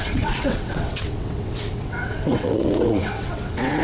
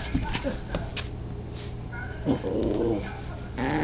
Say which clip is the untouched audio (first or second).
second